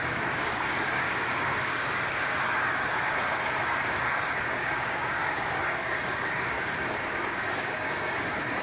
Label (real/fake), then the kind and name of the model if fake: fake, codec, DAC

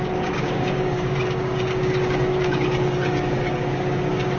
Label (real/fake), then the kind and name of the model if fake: fake, codec, DAC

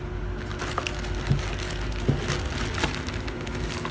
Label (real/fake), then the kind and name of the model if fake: real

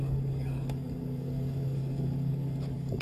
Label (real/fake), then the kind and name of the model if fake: fake, codec, DAC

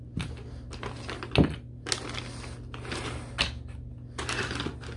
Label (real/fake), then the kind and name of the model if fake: real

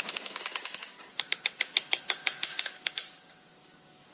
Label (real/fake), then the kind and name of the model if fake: fake, codec, DAC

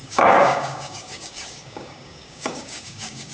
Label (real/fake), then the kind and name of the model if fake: fake, codec, DAC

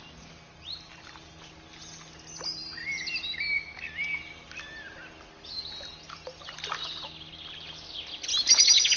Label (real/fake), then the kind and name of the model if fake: real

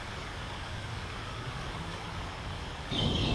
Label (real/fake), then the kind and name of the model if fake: fake, codec, DAC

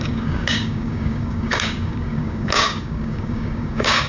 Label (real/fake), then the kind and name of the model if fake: fake, codec, DAC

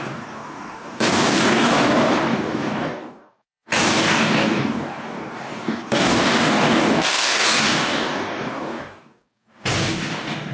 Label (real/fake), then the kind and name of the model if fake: fake, codec, DAC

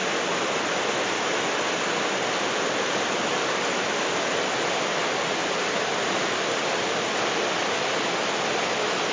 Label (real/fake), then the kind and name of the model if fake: real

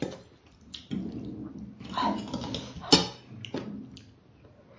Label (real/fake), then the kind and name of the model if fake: real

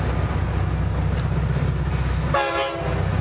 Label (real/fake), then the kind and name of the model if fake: real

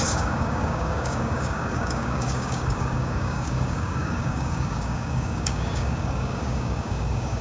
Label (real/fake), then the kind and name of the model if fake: fake, codec, DAC